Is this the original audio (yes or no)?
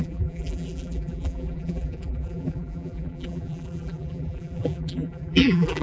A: no